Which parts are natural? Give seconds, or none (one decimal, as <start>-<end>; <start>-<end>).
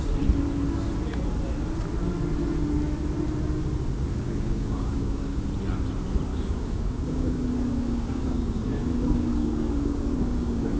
0.0-4.1; 5.5-6.3